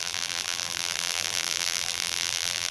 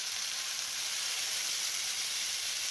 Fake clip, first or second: first